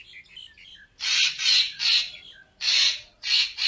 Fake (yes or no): no